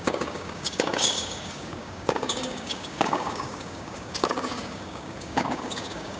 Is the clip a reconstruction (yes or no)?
yes